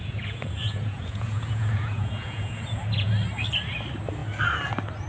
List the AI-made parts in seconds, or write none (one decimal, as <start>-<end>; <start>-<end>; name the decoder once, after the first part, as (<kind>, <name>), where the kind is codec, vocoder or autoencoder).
0.0-3.1 (vocoder, Vocos)